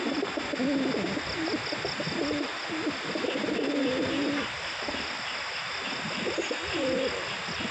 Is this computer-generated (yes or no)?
no